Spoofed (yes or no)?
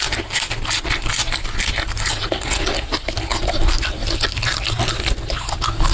no